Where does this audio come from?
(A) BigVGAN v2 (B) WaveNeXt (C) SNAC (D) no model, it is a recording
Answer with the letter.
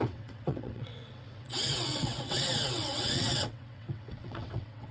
B